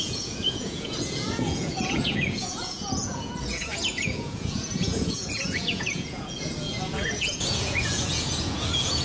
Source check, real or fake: fake